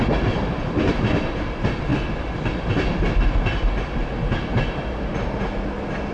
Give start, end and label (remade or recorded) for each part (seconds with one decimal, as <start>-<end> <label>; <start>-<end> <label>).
0.0-6.1 recorded